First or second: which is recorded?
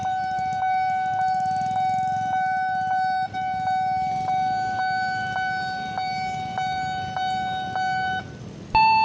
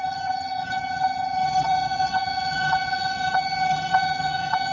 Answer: first